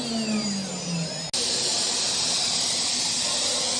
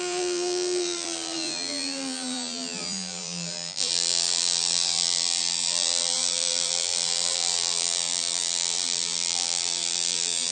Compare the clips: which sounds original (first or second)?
first